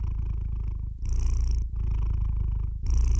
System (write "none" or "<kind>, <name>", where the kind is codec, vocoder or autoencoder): none